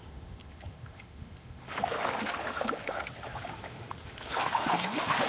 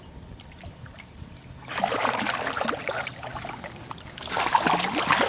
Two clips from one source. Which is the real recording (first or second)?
second